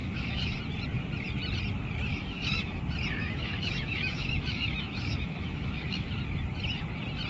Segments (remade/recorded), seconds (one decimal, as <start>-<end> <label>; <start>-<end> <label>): 0.0-0.6 remade; 0.6-2.1 recorded; 2.1-2.8 remade; 2.8-3.2 recorded; 3.2-6.1 remade; 6.1-7.3 recorded